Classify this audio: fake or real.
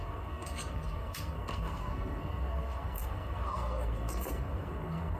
fake